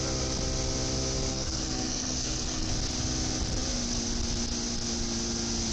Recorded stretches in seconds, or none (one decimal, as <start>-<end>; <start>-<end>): 0.0-1.3; 2.7-5.7